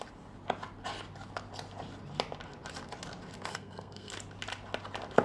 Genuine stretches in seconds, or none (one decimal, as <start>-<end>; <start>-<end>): 0.0-3.5; 4.1-5.2